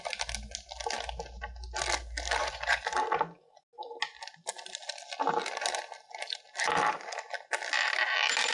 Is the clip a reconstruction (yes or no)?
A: no